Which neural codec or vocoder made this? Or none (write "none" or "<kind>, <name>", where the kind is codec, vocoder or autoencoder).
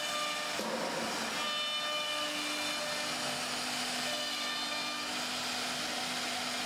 none